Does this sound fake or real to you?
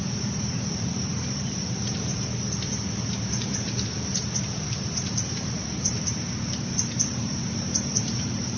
fake